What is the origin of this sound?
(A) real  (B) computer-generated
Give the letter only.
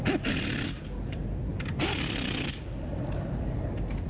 A